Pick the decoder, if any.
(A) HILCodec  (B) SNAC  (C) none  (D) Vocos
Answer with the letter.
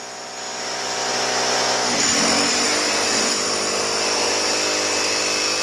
C